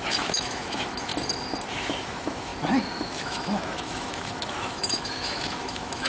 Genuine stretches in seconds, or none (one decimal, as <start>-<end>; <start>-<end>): 1.1-1.8; 2.5-3.0

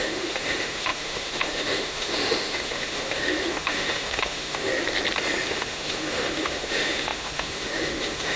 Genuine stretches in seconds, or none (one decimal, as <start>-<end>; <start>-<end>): 4.7-5.5

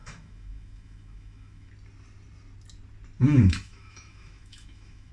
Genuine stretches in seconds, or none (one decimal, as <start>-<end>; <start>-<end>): 1.7-3.2

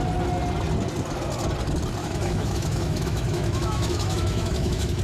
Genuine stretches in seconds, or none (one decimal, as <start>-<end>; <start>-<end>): 0.0-2.0

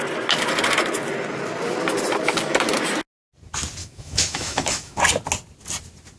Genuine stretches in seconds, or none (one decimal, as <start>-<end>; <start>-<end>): 0.0-3.8; 5.0-6.2